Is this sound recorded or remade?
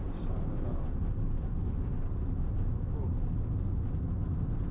recorded